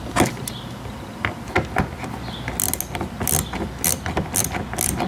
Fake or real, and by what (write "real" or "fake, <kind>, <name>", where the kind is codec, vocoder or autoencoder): real